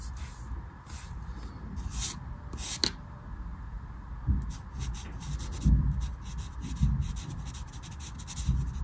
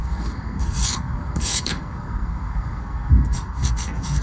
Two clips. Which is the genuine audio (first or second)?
first